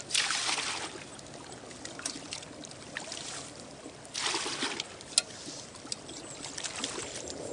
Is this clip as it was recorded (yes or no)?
yes